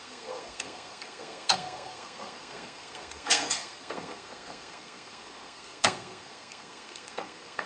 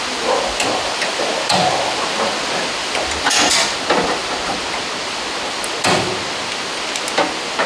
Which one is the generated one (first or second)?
first